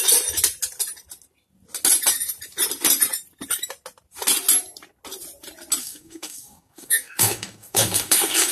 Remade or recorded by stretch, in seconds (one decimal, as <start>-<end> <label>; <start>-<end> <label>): 0.0-5.8 recorded; 5.8-8.5 remade